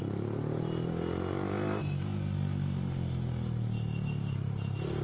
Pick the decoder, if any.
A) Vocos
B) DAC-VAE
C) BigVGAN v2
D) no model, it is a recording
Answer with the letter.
D